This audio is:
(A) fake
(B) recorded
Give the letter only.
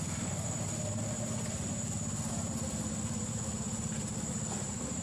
B